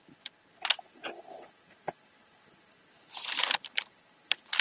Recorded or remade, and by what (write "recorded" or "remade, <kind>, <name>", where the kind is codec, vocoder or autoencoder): recorded